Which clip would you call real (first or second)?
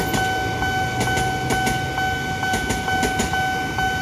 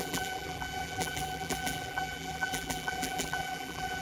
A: first